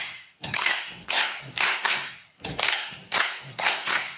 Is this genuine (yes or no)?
no